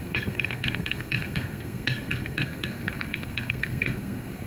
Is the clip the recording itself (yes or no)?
no